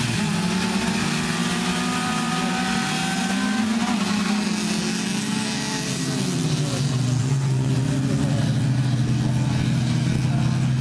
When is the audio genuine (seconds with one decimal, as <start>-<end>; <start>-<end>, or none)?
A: 0.0-7.2; 7.7-10.8